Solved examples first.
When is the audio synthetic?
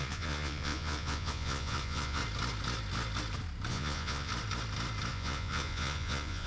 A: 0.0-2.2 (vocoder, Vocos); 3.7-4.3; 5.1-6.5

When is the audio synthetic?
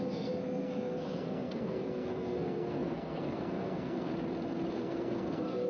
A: 0.0-4.1 (codec, SNAC); 4.7-5.7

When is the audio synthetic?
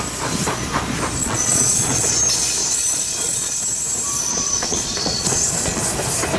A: 1.2-2.1 (vocoder, Vocos); 2.6-3.5; 4.3-5.8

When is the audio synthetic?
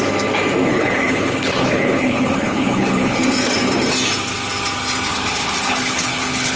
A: 0.7-3.2 (codec, HILCodec); 5.1-6.6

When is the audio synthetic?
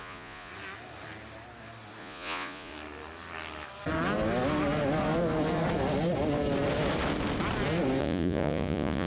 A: 0.0-0.5 (vocoder, Vocos); 2.0-2.7; 8.0-9.1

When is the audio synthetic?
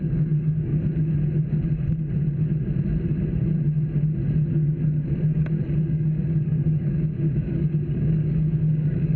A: 0.0-0.7 (codec, DAC); 5.8-9.2